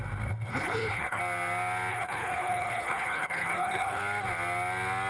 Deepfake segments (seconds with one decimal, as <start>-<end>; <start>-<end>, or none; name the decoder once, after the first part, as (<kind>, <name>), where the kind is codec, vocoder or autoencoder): 0.5-1.2 (codec, HILCodec); 1.9-4.0